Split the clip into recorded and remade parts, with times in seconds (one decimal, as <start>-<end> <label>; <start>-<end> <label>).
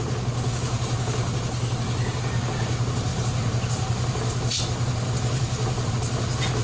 0.0-6.6 recorded